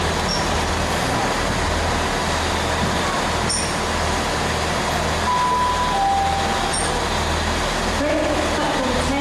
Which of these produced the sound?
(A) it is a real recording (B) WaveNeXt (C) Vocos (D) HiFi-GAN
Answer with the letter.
A